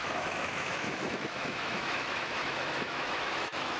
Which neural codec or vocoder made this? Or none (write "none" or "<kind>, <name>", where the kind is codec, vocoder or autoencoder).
autoencoder, DAC-VAE